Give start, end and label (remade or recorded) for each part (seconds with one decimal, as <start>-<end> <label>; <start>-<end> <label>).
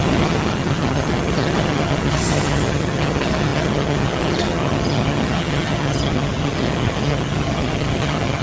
0.0-8.4 remade